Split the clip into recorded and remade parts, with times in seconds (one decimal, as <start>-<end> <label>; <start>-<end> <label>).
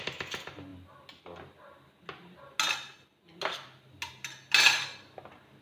0.0-5.6 recorded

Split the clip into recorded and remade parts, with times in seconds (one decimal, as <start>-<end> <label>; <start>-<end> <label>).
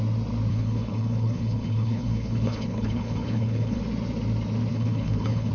0.0-0.5 recorded; 0.5-3.8 remade; 3.8-4.7 recorded; 4.7-5.5 remade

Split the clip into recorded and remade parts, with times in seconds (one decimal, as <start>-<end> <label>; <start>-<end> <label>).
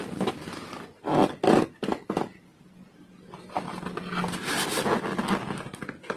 0.0-6.2 recorded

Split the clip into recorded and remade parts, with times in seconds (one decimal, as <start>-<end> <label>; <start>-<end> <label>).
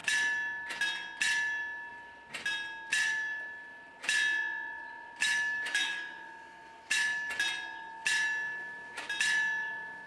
0.0-5.2 recorded; 5.2-7.3 remade; 7.3-10.1 recorded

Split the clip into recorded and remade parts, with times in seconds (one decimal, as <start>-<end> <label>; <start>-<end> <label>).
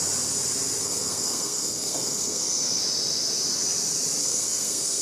0.0-0.8 recorded; 0.8-2.8 remade; 2.8-4.2 recorded; 4.2-5.0 remade